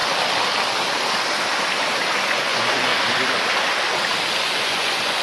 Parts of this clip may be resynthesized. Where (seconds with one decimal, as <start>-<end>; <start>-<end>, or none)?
2.3-2.9; 4.4-5.2